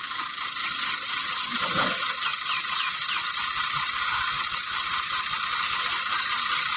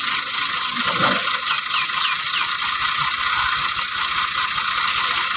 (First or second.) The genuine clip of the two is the second